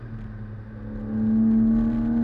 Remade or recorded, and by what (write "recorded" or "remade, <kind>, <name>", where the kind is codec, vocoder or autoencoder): recorded